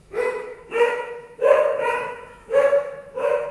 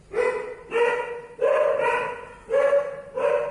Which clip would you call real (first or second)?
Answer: second